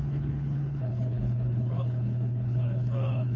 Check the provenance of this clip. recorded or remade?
remade